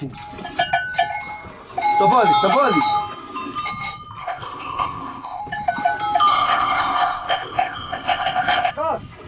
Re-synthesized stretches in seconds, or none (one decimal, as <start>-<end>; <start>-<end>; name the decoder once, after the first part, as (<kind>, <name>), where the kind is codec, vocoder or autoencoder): 4.2-5.4 (codec, ZipCodec); 6.3-8.7